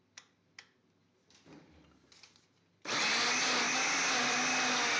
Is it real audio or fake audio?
real